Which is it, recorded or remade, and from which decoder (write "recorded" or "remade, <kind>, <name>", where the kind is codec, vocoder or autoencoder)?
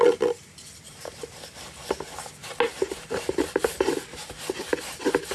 recorded